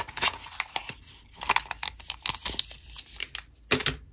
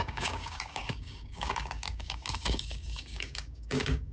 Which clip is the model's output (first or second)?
second